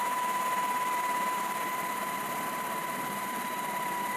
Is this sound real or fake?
fake